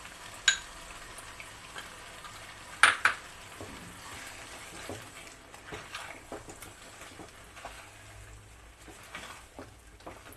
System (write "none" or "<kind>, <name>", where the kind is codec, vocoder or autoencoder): none